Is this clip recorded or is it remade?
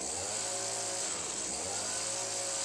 recorded